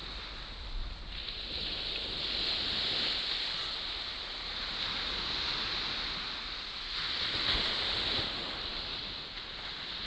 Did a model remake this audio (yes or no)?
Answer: no